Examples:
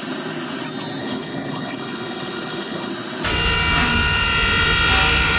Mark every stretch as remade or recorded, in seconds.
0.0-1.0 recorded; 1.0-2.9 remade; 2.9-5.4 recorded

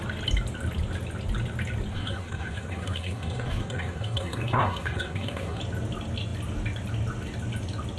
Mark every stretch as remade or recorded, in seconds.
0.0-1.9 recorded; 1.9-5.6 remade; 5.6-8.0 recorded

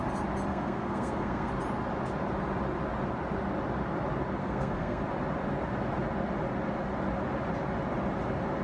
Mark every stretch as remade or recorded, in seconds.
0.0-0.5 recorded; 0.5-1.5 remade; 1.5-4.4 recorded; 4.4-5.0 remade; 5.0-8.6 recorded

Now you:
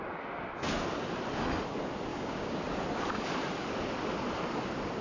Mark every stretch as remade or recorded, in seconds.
0.0-2.1 recorded; 2.1-2.6 remade; 2.6-5.0 recorded